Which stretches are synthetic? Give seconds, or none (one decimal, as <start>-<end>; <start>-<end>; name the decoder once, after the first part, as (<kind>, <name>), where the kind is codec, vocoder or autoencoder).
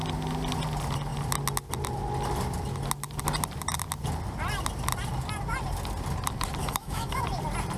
6.6-7.2 (autoencoder, DAC-VAE)